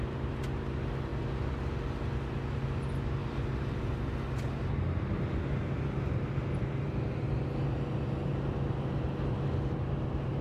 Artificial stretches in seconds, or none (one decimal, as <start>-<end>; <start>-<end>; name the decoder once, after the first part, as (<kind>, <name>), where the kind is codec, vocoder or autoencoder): none